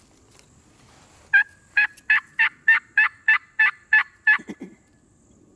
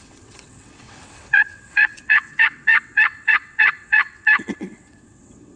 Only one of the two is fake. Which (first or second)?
second